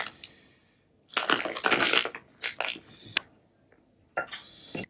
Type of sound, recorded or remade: recorded